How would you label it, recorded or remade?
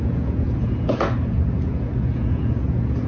remade